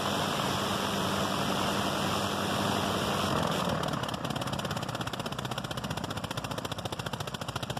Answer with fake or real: real